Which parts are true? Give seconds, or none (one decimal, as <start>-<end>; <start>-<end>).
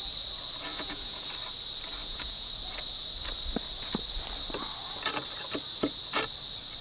0.0-0.7; 1.3-2.0; 2.5-6.8